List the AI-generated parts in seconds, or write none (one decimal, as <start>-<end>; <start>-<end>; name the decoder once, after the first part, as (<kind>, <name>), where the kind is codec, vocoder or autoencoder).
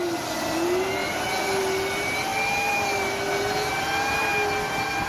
none